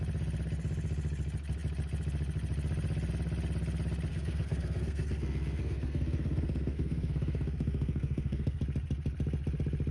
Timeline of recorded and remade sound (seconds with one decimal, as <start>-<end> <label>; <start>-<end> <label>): 0.0-4.1 recorded; 4.1-8.6 remade; 8.6-9.9 recorded